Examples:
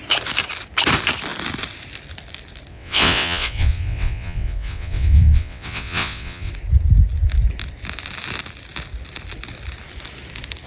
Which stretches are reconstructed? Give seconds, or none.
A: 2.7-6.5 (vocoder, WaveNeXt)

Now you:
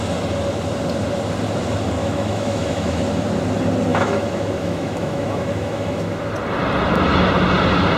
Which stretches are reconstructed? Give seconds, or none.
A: 2.0-3.0 (autoencoder, DAC-VAE); 3.9-6.3